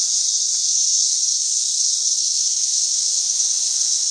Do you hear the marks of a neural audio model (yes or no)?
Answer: yes